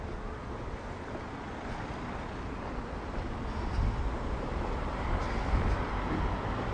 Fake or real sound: real